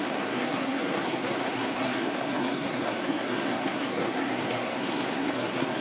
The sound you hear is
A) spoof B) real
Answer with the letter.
A